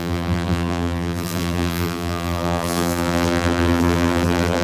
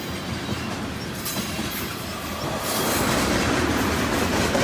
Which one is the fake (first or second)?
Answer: first